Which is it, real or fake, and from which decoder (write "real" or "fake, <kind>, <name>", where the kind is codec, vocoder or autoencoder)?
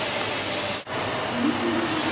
real